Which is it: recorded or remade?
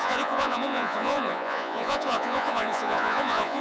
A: remade